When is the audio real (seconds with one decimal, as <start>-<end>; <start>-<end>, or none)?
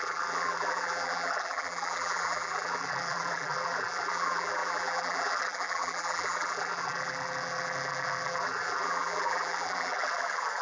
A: none